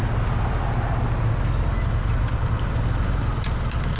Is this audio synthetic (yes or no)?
no